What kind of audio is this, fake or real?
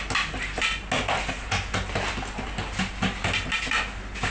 real